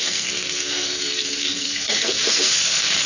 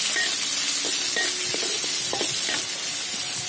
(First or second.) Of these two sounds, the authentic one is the second